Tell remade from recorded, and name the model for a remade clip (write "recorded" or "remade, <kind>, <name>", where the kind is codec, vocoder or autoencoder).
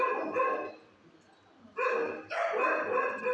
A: recorded